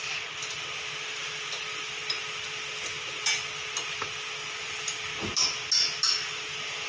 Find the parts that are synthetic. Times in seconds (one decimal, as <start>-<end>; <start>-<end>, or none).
none